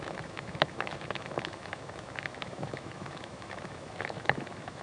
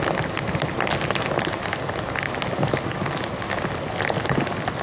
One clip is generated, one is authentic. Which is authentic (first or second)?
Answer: second